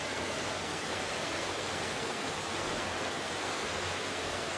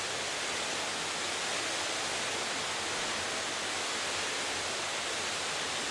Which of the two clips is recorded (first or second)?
second